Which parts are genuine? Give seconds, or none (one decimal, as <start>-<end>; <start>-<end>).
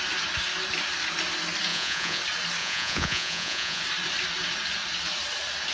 0.0-1.7; 2.2-2.6; 3.8-5.7